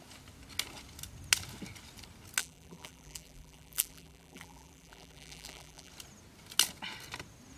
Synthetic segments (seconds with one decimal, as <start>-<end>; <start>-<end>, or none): 2.4-5.9